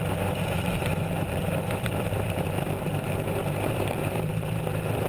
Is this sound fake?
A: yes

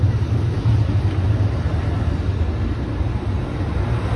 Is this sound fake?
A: no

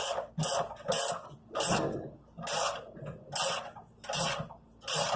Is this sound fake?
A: no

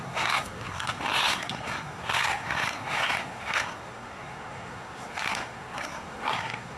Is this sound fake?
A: yes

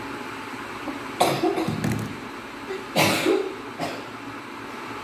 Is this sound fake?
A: no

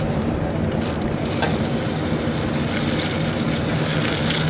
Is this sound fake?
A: no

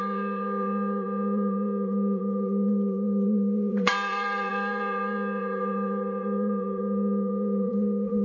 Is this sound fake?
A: yes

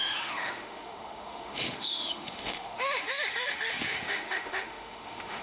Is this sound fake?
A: yes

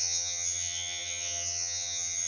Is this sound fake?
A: yes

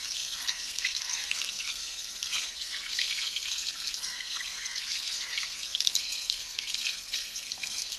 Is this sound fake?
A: yes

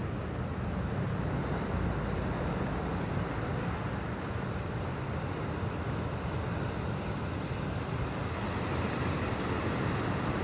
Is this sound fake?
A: no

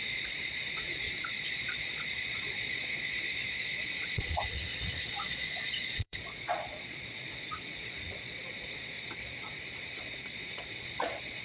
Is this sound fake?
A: yes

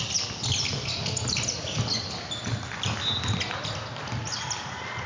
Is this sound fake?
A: no